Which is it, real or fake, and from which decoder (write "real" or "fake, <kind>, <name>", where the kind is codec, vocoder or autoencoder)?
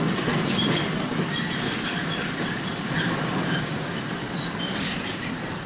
fake, vocoder, BigVGAN v2